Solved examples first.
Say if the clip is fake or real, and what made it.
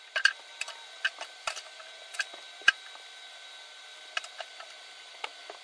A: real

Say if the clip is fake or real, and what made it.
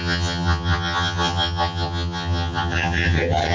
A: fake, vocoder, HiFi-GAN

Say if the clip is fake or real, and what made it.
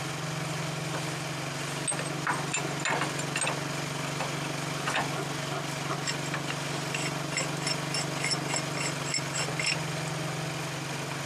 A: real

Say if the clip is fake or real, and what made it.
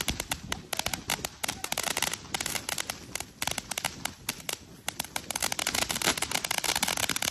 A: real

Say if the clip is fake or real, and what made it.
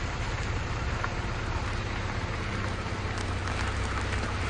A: fake, vocoder, BigVGAN v2